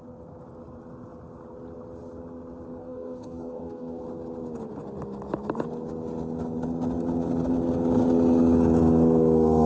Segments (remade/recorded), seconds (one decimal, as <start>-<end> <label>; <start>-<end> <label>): 0.0-2.8 recorded; 2.8-4.0 remade; 4.0-9.7 recorded